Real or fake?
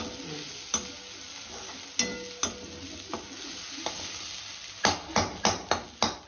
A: real